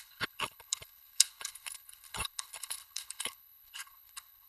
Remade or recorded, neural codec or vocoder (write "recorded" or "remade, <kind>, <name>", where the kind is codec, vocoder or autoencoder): remade, codec, HILCodec